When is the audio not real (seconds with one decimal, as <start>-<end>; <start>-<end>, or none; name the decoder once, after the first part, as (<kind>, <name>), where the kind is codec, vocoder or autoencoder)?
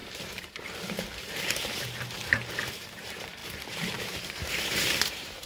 0.0-5.5 (vocoder, BigVGAN v2)